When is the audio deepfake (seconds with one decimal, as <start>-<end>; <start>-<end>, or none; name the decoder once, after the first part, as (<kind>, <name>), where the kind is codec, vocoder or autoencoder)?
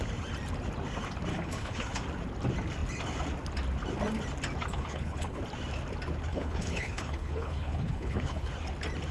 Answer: 1.3-2.0 (codec, HILCodec); 4.7-5.4; 6.3-8.5